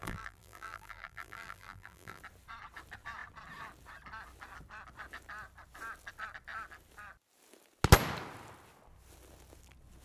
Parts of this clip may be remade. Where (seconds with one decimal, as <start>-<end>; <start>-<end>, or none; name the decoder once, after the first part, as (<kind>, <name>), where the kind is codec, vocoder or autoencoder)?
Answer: 0.0-2.2 (vocoder, BigVGAN v2)